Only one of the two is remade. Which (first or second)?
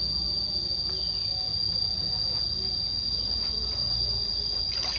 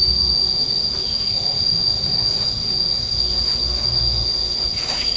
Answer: second